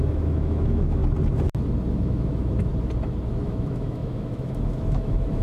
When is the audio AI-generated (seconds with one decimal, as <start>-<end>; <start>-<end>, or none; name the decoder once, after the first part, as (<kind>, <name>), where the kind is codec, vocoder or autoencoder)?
0.0-1.0 (autoencoder, DAC-VAE); 1.9-2.7; 3.3-5.4